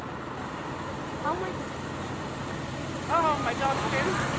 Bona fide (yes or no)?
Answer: yes